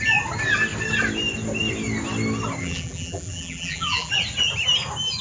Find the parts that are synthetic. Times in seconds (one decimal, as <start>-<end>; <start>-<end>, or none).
2.6-4.1